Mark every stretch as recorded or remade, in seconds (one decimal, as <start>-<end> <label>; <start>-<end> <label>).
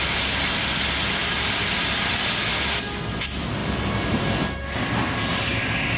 0.0-6.0 recorded